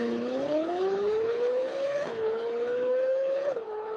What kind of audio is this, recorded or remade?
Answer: remade